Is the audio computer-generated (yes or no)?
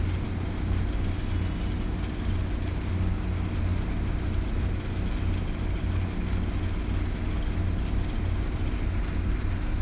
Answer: no